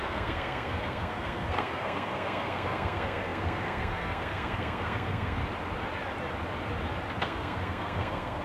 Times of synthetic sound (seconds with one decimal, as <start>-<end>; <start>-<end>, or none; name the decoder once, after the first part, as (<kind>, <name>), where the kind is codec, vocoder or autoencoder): 0.0-5.4 (codec, SNAC); 7.2-8.4